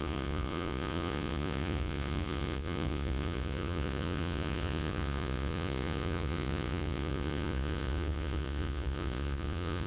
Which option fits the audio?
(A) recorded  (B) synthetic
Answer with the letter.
B